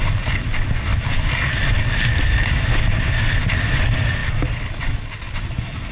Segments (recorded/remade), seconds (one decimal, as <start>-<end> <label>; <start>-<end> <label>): 0.0-2.3 recorded; 2.3-3.2 remade; 3.2-5.9 recorded